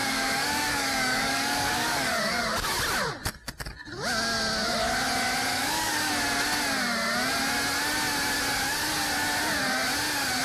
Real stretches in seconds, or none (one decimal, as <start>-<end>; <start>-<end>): 2.4-5.5; 6.1-10.4